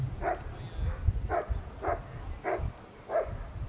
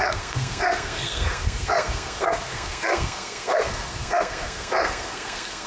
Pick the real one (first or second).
first